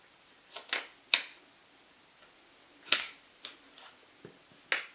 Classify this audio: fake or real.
real